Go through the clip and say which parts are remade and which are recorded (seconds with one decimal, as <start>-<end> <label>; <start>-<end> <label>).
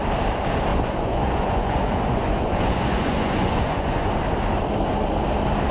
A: 0.0-0.7 recorded; 0.7-4.1 remade; 4.1-5.7 recorded